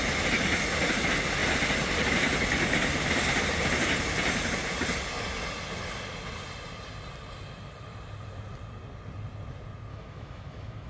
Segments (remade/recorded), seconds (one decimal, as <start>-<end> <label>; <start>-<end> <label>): 0.0-9.9 recorded; 9.9-10.9 remade